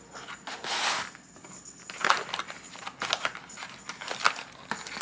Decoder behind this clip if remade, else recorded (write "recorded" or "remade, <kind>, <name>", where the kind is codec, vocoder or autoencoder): recorded